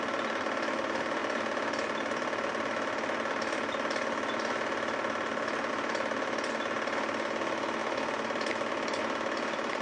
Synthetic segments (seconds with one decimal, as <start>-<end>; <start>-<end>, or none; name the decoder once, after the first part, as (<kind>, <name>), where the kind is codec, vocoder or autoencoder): none

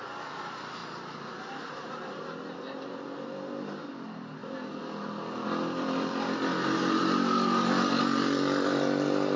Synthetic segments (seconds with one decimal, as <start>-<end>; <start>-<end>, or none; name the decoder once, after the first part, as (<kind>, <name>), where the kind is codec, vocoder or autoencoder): none

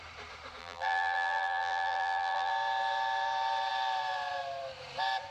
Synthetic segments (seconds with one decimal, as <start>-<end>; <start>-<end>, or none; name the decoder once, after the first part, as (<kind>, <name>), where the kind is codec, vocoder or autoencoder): 0.6-2.5 (vocoder, BigVGAN v2)

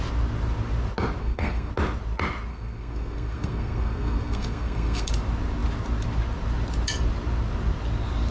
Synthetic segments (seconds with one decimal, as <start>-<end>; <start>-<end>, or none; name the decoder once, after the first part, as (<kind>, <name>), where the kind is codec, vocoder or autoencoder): 1.2-1.7 (codec, SNAC); 2.5-5.1